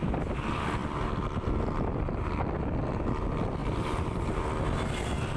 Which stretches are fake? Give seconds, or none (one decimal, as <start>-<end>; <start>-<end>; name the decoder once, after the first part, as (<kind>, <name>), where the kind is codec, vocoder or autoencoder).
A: 3.6-4.4 (vocoder, BigVGAN v2)